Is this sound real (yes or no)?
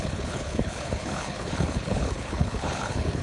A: no